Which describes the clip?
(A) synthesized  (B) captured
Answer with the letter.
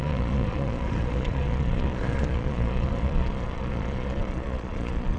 A